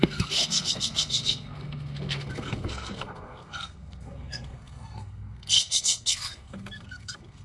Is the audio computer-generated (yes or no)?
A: yes